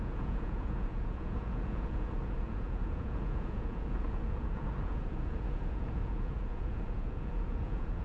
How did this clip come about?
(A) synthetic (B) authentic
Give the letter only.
A